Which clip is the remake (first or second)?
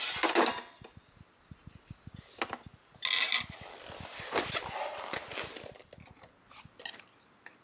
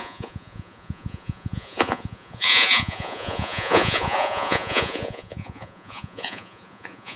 second